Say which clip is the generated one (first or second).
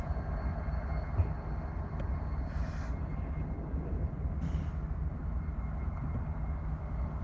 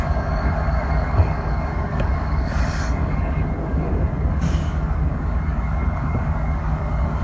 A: second